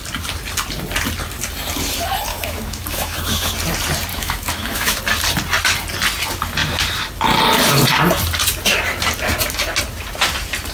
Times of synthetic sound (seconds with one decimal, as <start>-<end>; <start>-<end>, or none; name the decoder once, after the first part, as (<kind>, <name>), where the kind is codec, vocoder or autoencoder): 2.3-3.5 (autoencoder, DAC-VAE); 4.1-5.0